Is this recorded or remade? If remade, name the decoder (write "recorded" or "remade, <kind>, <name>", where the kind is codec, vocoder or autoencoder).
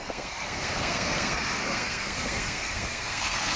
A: remade, codec, SNAC